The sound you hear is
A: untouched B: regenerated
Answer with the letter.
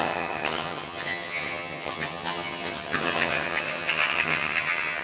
B